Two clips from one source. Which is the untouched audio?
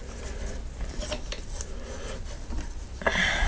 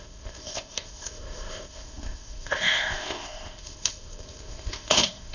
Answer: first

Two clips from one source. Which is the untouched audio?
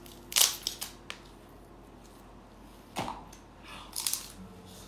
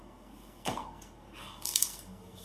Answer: first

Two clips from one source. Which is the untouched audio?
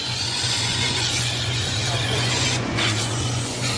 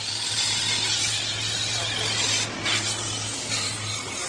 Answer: second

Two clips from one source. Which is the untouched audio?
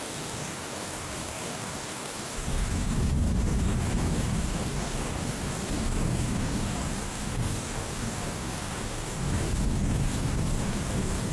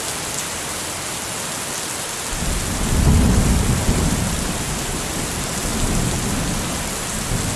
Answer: second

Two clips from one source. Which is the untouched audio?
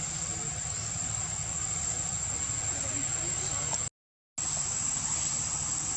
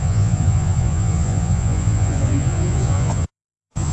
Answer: first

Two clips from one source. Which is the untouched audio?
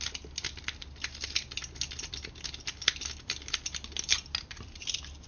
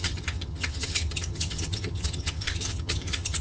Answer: first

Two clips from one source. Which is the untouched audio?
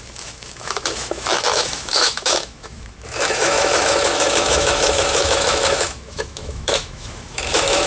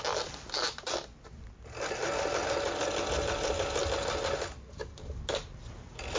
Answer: second